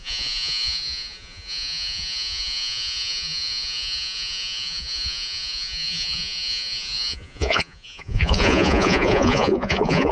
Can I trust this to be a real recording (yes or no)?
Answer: no